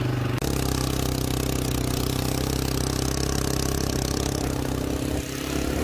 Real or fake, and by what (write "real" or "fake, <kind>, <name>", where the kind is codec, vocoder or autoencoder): real